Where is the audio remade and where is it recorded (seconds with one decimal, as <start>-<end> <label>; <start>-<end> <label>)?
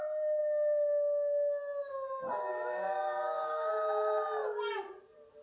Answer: 0.0-2.5 recorded; 2.5-3.7 remade; 3.7-5.4 recorded